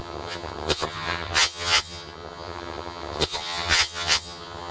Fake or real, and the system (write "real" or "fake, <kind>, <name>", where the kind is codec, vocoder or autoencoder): fake, vocoder, HiFi-GAN